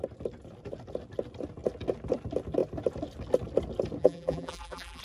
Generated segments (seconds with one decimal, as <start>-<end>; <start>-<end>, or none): 4.0-5.0